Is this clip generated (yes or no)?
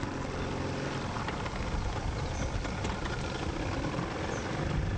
no